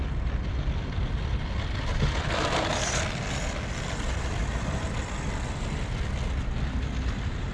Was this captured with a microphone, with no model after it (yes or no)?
yes